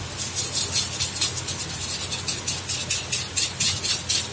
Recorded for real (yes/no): yes